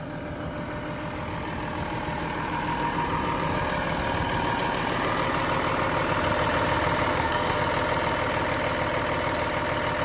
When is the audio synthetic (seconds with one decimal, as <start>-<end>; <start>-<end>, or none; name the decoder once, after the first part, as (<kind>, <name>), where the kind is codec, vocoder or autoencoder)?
7.1-7.6 (codec, SNAC)